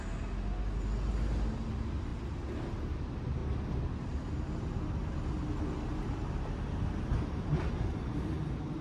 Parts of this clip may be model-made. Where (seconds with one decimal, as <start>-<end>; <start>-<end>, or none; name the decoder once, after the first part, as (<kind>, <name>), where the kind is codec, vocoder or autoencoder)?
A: none